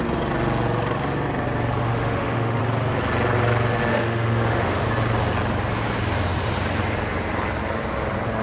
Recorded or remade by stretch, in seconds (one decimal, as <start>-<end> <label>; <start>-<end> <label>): 0.0-1.8 recorded; 1.8-2.6 remade; 2.6-3.9 recorded; 3.9-4.9 remade; 4.9-8.4 recorded